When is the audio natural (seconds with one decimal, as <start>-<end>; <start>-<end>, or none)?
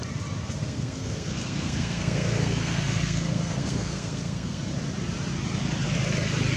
0.0-0.6; 4.6-6.6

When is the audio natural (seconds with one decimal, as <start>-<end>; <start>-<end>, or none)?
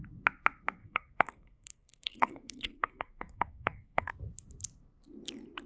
0.0-0.8; 4.1-5.7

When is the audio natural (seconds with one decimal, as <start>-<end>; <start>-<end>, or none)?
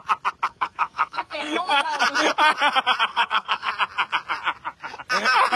0.0-0.5; 2.0-3.1; 3.7-5.6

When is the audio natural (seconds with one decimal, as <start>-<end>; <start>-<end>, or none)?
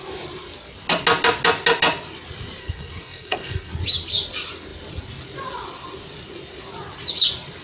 0.0-2.6; 3.7-7.6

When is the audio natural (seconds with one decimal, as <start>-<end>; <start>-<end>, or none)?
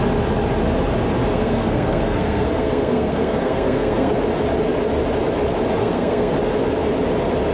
0.0-1.3; 4.1-5.8; 6.3-7.5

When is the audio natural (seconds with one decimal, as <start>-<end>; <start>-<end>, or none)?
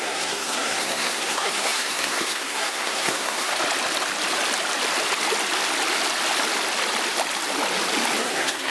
3.5-8.2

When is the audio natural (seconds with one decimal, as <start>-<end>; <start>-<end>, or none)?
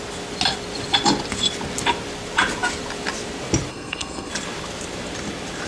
0.0-3.7; 4.3-5.7